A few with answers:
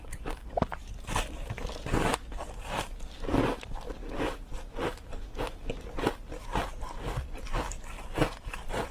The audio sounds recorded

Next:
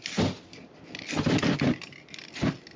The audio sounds recorded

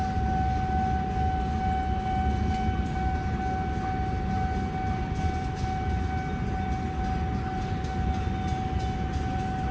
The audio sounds recorded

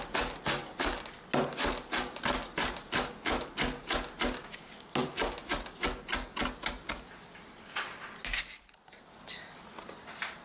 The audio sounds recorded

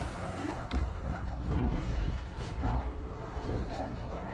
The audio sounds remade